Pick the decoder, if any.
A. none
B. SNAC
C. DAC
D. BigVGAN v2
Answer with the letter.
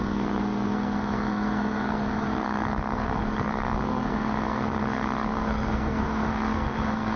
B